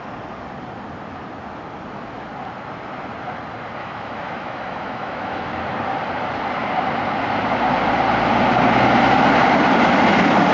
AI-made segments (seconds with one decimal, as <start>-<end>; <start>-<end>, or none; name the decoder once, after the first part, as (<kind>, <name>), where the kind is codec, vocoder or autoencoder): 3.8-5.6 (autoencoder, DAC-VAE)